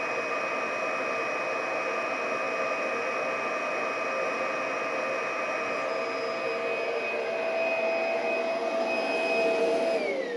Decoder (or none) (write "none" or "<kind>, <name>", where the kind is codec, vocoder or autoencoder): none